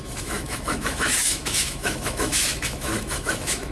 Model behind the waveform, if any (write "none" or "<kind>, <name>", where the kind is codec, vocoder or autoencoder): autoencoder, DAC-VAE